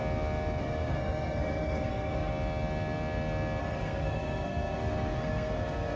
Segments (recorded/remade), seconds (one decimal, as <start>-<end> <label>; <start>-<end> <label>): 0.0-0.6 recorded; 0.6-2.3 remade; 2.3-3.6 recorded; 3.6-6.0 remade